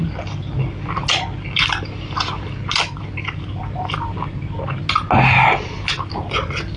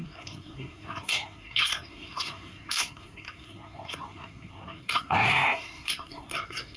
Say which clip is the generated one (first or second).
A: second